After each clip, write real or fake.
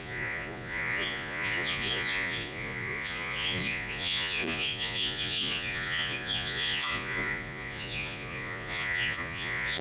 fake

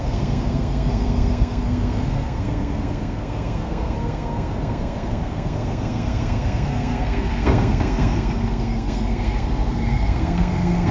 fake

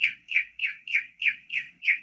fake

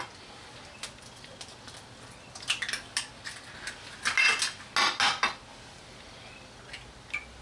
real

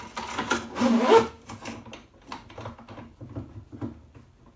real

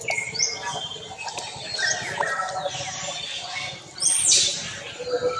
real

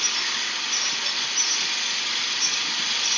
real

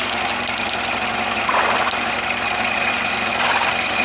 real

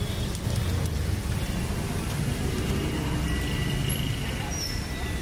real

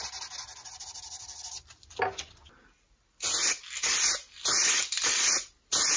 real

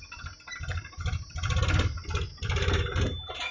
real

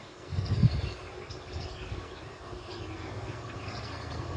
fake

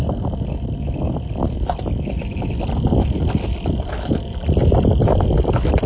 real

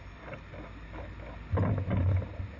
real